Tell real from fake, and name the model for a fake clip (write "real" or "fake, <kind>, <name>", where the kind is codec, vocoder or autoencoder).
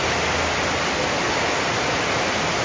real